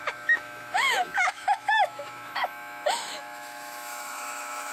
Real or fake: fake